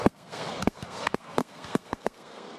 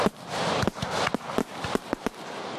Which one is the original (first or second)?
second